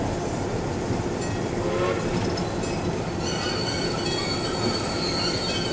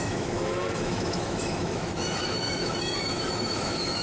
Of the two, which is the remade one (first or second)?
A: second